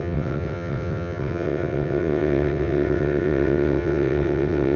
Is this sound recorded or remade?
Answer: remade